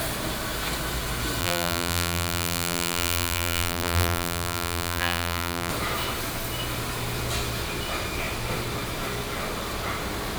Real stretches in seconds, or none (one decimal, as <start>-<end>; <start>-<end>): 0.0-1.4; 5.7-10.4